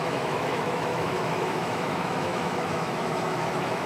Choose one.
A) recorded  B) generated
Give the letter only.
B